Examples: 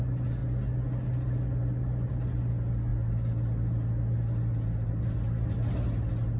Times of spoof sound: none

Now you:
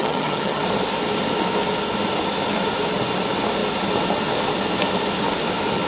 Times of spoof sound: 0.0-0.6 (vocoder, HiFi-GAN)

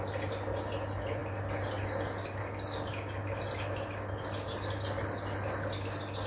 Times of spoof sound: none